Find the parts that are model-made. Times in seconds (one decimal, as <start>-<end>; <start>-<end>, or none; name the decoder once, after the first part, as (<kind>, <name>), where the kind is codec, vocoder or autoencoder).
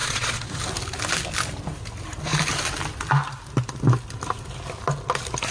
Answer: 0.0-0.6 (vocoder, Vocos)